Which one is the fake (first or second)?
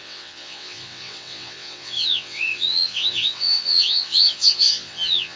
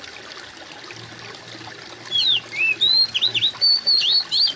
first